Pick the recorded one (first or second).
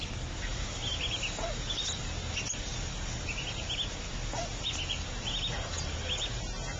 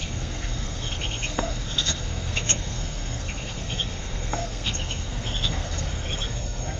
first